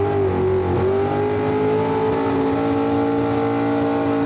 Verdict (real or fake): real